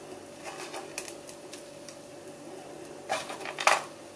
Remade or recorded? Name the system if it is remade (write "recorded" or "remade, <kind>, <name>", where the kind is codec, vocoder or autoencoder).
recorded